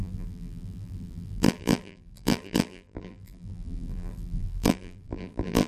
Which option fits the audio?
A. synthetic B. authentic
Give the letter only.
A